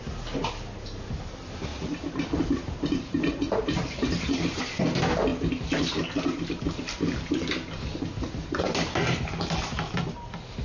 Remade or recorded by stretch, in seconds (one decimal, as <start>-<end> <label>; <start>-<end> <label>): 0.0-1.7 recorded; 1.7-4.6 remade; 4.6-10.6 recorded